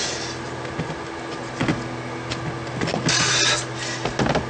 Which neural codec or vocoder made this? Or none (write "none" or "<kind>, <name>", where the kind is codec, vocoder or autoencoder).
none